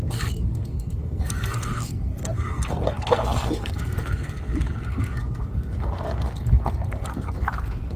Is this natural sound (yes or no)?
no